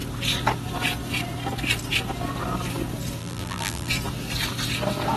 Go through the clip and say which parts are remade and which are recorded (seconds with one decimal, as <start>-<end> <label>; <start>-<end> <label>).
0.0-3.2 recorded; 3.2-3.9 remade; 3.9-5.2 recorded